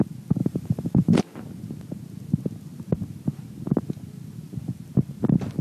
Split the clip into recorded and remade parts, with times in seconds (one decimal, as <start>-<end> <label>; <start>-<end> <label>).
0.0-0.4 recorded; 0.4-1.2 remade; 1.2-5.6 recorded